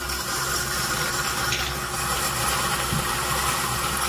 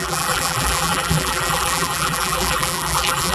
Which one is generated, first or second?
second